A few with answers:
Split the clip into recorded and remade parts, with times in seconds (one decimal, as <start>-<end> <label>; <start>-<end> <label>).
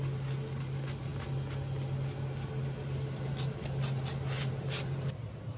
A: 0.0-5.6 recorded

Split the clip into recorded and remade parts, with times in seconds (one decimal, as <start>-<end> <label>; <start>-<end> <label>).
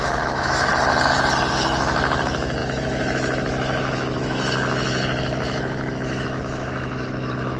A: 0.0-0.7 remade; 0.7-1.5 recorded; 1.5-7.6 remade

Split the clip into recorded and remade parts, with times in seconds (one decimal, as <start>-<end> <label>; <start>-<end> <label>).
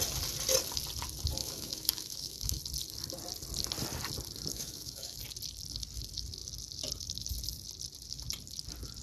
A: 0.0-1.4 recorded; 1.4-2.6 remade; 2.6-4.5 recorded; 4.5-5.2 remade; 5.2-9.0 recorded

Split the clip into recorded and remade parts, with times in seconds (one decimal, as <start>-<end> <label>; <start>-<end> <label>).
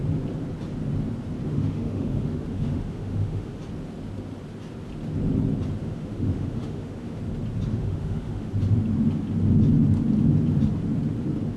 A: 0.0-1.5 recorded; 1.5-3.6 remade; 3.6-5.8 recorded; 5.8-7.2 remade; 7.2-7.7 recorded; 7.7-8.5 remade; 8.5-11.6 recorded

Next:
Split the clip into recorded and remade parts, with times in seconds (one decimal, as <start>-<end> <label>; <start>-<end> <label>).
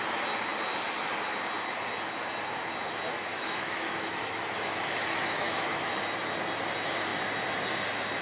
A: 0.0-3.3 recorded; 3.3-5.9 remade; 5.9-8.2 recorded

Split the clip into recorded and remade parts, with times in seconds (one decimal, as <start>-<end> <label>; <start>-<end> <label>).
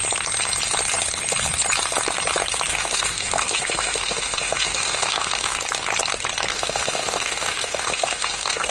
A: 0.0-2.7 recorded; 2.7-5.6 remade; 5.6-6.5 recorded; 6.5-8.7 remade